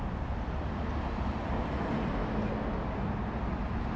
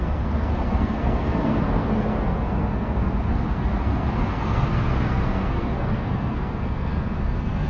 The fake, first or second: second